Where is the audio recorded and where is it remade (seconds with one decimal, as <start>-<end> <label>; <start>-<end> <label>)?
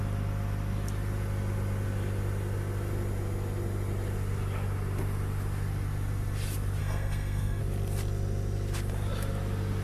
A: 0.0-6.8 recorded; 6.8-7.6 remade; 7.6-9.8 recorded